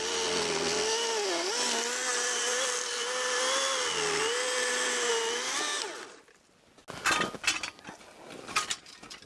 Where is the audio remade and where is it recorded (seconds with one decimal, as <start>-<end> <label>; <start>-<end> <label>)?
0.0-9.3 recorded